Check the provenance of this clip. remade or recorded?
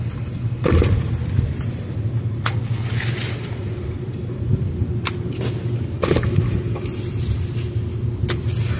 recorded